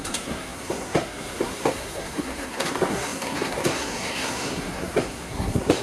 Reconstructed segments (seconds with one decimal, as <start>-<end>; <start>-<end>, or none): 0.0-5.8